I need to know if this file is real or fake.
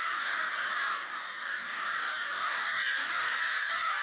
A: fake